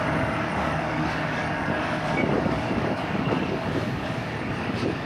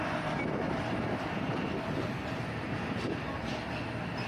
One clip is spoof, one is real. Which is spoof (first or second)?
first